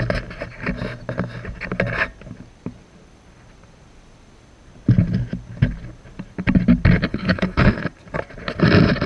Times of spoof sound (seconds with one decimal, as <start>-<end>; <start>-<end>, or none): 7.1-7.8